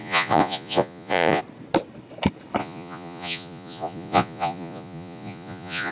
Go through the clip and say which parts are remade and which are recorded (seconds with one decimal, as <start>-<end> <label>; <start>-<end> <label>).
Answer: 0.0-1.4 remade; 1.4-2.6 recorded; 2.6-5.9 remade